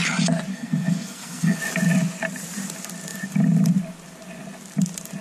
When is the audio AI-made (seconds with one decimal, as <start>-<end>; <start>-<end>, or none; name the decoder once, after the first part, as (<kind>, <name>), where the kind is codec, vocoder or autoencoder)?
0.5-1.6 (codec, SNAC)

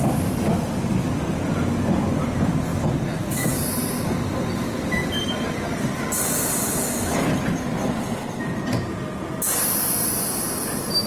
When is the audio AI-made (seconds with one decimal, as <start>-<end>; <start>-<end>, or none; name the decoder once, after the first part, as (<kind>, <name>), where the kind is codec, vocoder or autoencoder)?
none